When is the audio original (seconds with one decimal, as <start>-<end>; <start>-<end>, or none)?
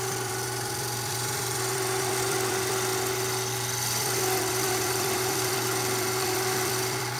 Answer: 2.9-4.0